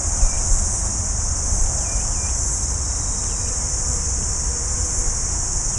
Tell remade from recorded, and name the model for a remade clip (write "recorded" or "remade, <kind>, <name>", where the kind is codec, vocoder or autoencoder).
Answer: recorded